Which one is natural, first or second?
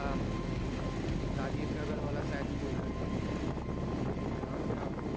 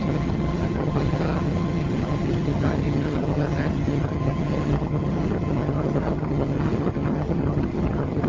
first